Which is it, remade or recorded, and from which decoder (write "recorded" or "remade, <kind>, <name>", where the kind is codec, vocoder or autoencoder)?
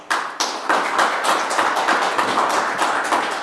recorded